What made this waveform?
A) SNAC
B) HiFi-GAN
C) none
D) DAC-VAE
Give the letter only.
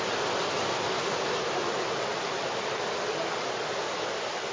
C